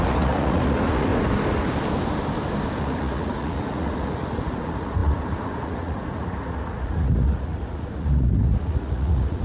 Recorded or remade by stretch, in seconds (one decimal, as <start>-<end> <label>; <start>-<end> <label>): 0.0-1.1 remade; 1.1-2.8 recorded; 2.8-9.4 remade